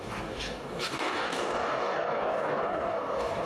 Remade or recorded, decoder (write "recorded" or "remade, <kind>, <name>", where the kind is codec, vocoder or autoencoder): remade, codec, DAC